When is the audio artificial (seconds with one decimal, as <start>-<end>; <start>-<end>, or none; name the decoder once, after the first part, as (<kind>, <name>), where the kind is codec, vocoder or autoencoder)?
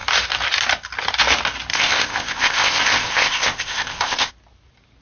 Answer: 1.7-4.3 (codec, ZipCodec)